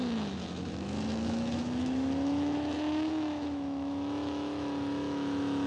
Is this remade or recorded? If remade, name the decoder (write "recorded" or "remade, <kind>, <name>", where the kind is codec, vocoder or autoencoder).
remade, autoencoder, DAC-VAE